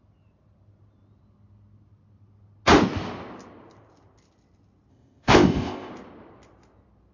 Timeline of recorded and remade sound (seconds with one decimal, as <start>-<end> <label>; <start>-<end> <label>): 0.0-4.9 recorded; 4.9-5.9 remade; 5.9-7.1 recorded